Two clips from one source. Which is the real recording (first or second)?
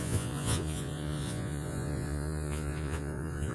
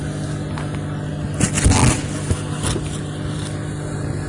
second